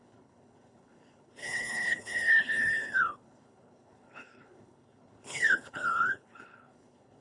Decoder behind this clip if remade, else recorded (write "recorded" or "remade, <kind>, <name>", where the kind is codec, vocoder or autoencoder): remade, codec, HILCodec